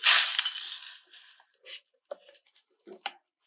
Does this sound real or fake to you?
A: real